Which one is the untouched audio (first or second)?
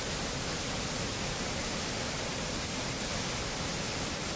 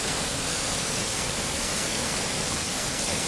first